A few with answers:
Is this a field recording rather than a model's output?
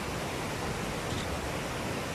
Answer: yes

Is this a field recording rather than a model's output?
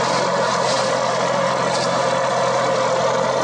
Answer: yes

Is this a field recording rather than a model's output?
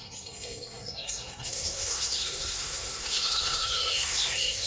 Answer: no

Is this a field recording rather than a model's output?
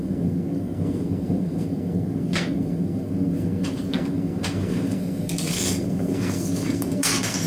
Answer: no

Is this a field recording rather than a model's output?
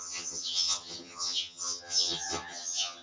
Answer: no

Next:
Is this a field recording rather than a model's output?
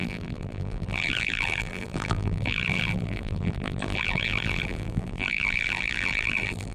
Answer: no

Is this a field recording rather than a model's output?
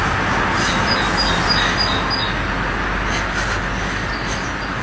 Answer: yes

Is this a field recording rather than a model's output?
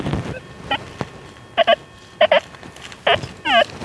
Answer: yes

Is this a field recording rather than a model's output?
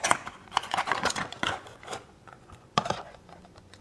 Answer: no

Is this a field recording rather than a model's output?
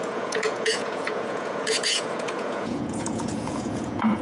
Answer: no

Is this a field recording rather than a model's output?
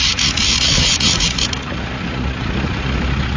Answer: no